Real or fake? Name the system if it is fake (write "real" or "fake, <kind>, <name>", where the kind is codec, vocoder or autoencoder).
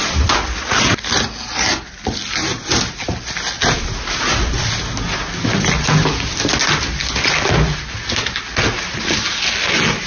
real